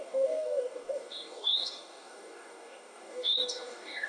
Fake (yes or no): yes